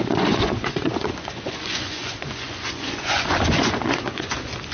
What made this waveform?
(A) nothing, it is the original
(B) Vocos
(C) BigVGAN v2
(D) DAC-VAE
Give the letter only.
B